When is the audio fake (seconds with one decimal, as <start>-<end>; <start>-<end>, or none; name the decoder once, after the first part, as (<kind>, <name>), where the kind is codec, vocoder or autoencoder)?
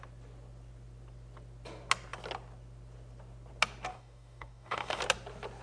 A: 3.9-5.0 (codec, DAC)